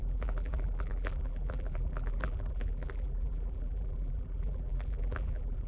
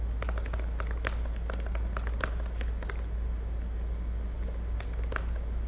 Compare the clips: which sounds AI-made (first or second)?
first